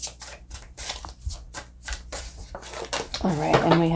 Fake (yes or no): no